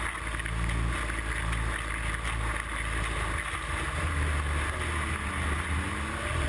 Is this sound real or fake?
real